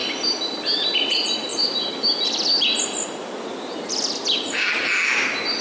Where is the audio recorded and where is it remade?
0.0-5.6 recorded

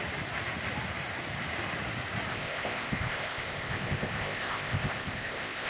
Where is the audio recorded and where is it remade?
0.0-2.3 recorded; 2.3-5.7 remade

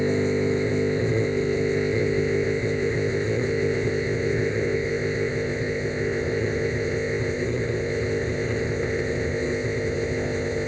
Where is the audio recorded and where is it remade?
0.0-10.7 remade

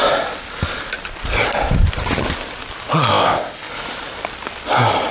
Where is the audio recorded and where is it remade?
0.0-3.1 recorded; 3.1-3.7 remade; 3.7-5.1 recorded

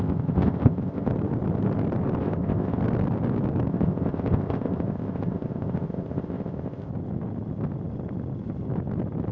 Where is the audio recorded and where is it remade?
0.0-1.1 remade; 1.1-2.2 recorded; 2.2-2.8 remade; 2.8-3.7 recorded; 3.7-6.9 remade; 6.9-9.3 recorded